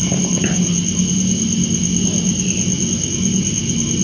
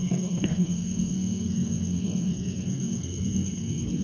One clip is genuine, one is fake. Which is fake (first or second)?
second